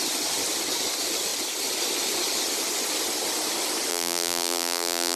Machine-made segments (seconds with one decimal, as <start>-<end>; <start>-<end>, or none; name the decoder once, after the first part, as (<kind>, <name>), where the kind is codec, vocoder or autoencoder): 3.9-5.2 (vocoder, BigVGAN v2)